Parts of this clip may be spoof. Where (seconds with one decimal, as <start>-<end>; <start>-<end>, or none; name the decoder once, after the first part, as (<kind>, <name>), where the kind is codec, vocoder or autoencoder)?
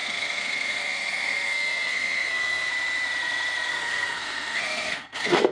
0.0-2.7 (codec, SNAC); 3.7-5.5